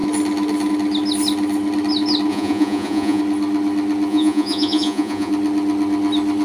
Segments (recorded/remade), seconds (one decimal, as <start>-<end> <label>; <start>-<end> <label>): 0.0-2.3 recorded; 2.3-3.2 remade; 3.2-4.1 recorded; 4.1-5.3 remade; 5.3-6.4 recorded